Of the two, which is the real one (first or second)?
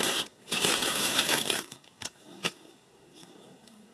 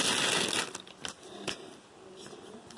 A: second